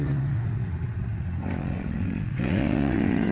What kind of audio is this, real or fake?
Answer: fake